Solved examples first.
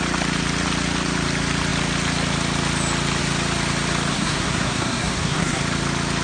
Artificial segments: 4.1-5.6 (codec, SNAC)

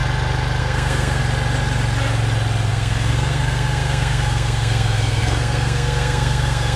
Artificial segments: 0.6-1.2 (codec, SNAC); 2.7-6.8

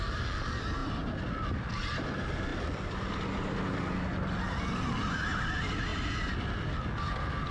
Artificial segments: none

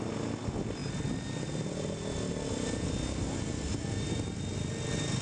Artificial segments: none

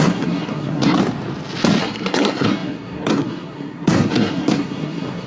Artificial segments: 0.0-1.0 (codec, SNAC); 1.8-5.3

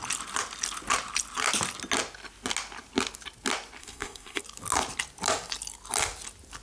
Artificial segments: 3.8-4.4 (codec, SNAC)

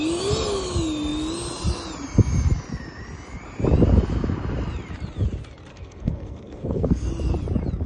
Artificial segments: 5.7-7.1 (codec, SNAC)